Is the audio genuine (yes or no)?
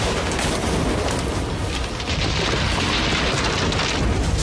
yes